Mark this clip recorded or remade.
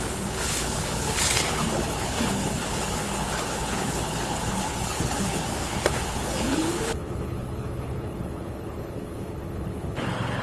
remade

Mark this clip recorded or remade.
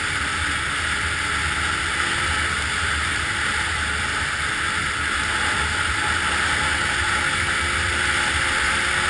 recorded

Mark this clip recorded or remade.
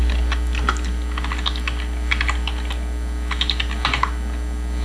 recorded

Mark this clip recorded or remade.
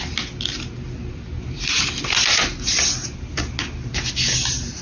recorded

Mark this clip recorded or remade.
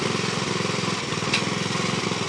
recorded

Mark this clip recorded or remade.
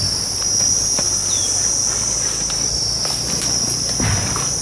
recorded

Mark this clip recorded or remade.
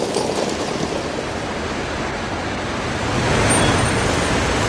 recorded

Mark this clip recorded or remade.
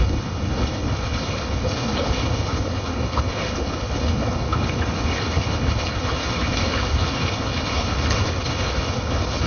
remade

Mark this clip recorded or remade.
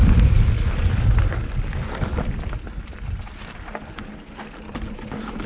recorded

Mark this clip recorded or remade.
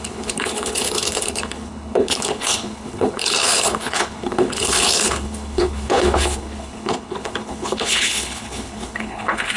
remade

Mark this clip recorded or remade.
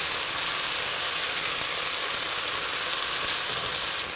recorded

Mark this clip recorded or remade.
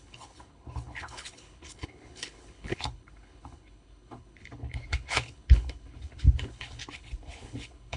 remade